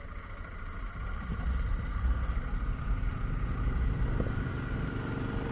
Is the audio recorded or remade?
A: recorded